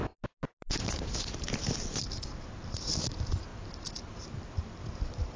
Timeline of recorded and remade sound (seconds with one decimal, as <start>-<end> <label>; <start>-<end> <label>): 0.0-5.4 recorded